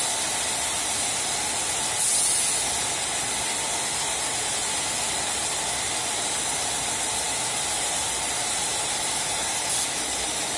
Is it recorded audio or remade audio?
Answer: recorded